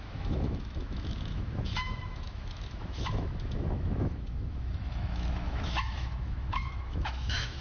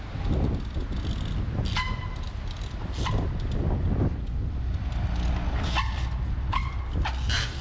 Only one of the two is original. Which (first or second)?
second